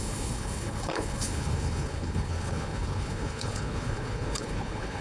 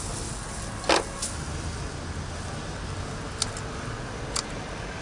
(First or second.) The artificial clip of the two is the first